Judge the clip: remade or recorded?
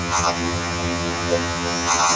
remade